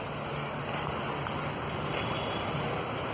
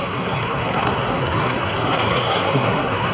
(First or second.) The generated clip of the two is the second